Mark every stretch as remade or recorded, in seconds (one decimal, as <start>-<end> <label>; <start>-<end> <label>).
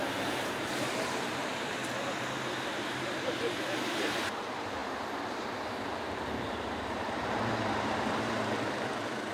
0.0-1.8 remade; 1.8-2.8 recorded; 2.8-9.3 remade